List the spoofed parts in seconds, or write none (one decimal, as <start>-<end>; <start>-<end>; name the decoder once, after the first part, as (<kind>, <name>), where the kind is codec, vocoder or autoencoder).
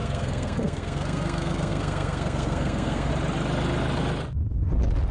0.0-3.1 (codec, SNAC)